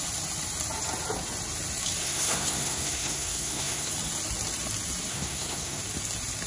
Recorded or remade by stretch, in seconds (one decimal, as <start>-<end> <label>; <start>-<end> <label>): 0.0-2.0 recorded; 2.0-3.9 remade; 3.9-5.1 recorded; 5.1-5.8 remade; 5.8-6.5 recorded